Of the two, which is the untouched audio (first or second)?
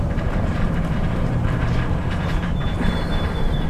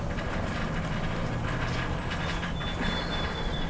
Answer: second